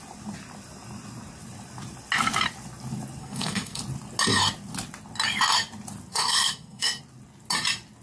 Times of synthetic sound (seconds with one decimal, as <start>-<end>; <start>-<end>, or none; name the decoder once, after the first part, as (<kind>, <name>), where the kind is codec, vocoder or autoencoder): 3.2-3.8 (codec, SNAC); 6.1-7.0